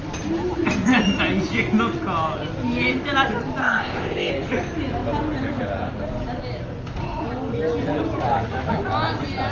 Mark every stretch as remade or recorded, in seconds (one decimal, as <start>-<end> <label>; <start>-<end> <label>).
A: 0.0-3.6 recorded; 3.6-4.3 remade; 4.3-9.5 recorded